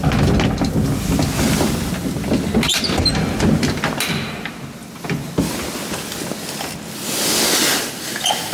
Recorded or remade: recorded